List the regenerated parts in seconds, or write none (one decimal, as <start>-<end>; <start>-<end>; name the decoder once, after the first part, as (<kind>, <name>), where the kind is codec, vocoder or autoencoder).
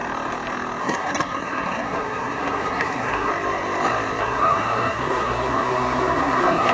0.8-3.3 (codec, SNAC); 4.2-6.7